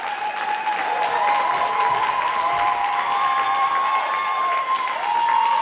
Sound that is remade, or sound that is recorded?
remade